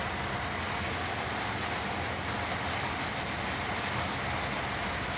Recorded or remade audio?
recorded